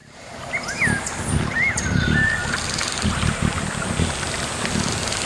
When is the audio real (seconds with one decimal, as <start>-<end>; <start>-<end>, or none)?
0.5-5.3